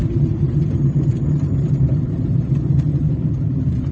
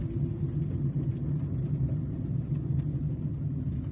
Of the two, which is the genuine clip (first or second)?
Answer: second